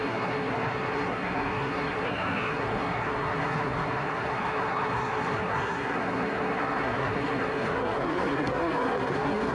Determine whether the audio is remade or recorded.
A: remade